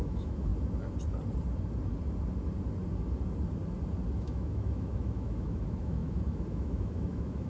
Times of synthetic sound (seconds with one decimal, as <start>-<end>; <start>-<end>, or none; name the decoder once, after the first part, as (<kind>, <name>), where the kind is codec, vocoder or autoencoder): 0.0-0.5 (autoencoder, DAC-VAE); 4.2-7.5